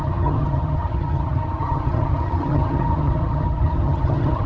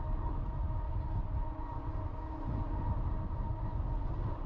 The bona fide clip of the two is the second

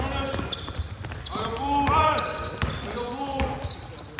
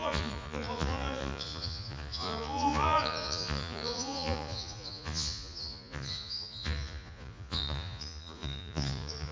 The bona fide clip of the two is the first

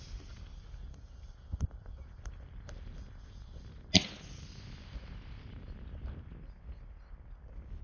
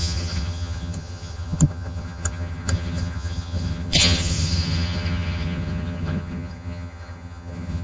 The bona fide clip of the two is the first